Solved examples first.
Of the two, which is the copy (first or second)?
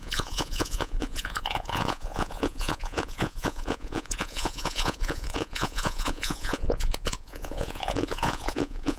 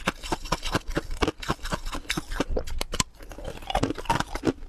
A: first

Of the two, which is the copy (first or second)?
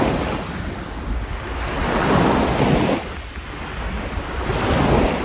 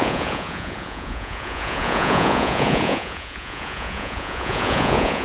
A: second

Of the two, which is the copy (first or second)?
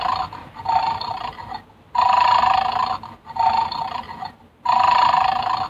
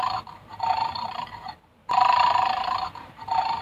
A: second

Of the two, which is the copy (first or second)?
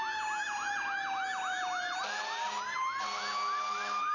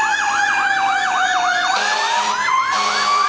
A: second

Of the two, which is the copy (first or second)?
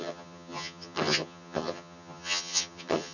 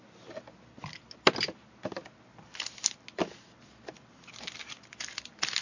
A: first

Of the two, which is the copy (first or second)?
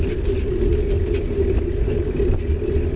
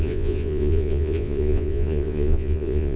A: second